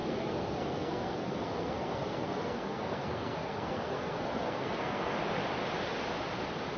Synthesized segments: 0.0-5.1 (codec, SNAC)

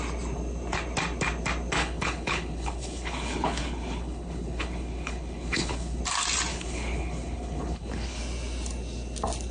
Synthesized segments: 1.8-6.0 (codec, HILCodec); 6.5-8.2

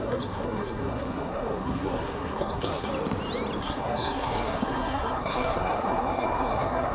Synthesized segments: 0.0-2.9 (codec, SNAC); 3.6-6.9

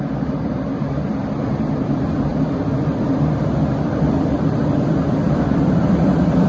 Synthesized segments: none

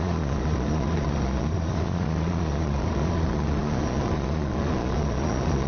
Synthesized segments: 0.0-5.7 (vocoder, Vocos)